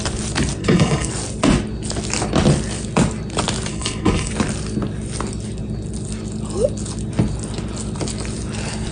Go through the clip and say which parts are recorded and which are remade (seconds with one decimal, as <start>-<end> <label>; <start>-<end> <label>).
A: 0.0-0.6 recorded; 0.6-1.1 remade; 1.1-3.7 recorded; 3.7-4.3 remade; 4.3-8.9 recorded